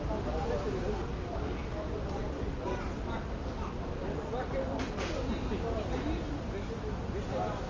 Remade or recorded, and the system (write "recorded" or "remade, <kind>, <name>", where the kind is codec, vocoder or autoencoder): recorded